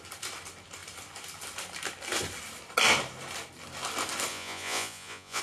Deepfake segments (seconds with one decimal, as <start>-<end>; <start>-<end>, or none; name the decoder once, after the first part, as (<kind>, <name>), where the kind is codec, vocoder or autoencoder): 4.3-5.4 (vocoder, Vocos)

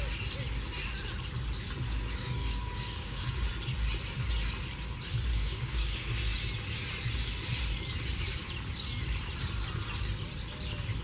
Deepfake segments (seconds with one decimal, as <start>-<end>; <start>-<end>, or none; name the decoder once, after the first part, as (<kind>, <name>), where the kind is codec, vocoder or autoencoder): 2.4-3.5 (codec, DAC); 5.3-6.0

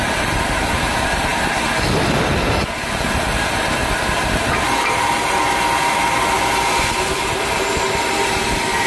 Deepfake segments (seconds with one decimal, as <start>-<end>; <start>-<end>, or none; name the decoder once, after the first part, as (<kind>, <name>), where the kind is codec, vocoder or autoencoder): none

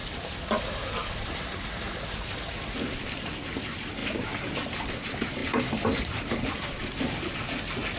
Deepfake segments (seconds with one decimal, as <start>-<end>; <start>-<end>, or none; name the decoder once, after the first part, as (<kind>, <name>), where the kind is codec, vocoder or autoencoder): 4.0-4.9 (vocoder, BigVGAN v2); 5.4-7.2

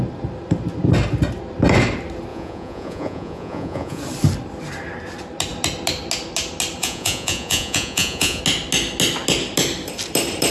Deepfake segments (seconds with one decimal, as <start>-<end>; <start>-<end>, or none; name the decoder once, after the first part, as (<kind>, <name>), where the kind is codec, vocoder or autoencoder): 2.3-4.0 (vocoder, Vocos); 6.8-8.4